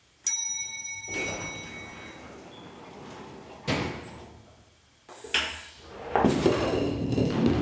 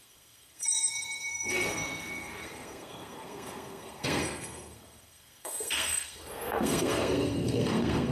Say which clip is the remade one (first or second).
second